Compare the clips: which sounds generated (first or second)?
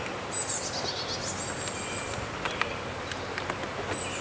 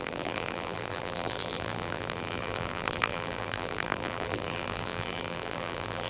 second